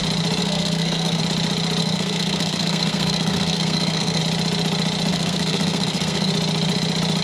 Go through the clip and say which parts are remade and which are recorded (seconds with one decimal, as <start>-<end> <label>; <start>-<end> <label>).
0.0-0.4 recorded; 0.4-1.2 remade; 1.2-1.8 recorded; 1.8-4.2 remade; 4.2-5.1 recorded; 5.1-6.3 remade; 6.3-7.2 recorded